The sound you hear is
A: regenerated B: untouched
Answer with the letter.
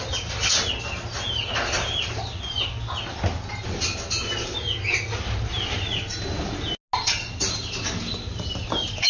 B